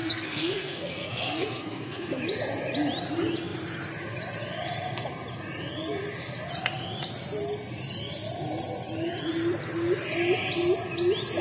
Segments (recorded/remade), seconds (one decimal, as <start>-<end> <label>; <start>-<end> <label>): 0.0-2.2 remade; 2.2-11.4 recorded